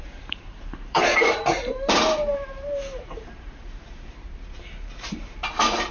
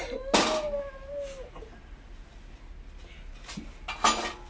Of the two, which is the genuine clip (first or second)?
second